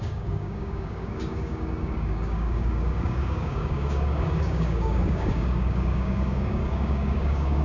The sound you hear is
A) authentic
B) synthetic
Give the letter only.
B